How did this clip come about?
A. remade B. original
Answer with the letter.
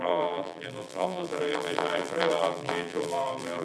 A